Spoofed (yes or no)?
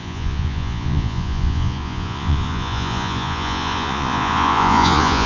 yes